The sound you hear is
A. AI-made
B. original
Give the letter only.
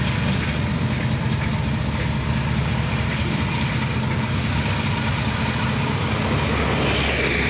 B